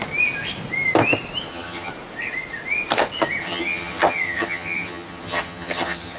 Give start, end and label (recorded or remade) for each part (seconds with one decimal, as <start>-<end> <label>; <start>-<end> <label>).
0.0-1.5 recorded; 1.5-1.9 remade; 1.9-3.4 recorded; 3.4-6.2 remade